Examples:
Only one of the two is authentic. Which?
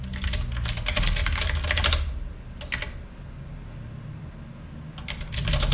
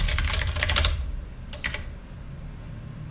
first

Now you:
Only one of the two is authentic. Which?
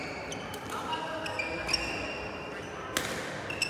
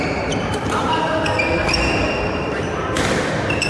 first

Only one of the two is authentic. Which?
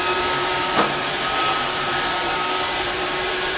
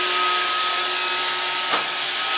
second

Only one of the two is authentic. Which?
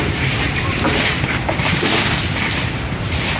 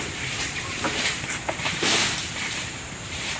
first